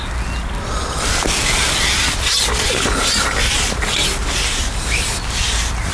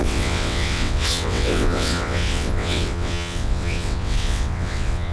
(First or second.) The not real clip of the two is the second